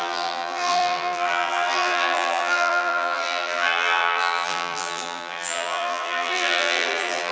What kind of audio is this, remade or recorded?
remade